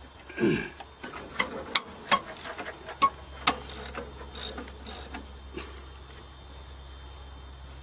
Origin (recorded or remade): recorded